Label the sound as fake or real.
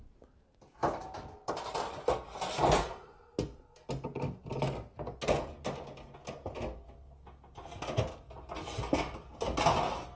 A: real